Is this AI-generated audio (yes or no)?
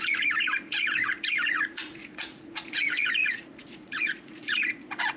yes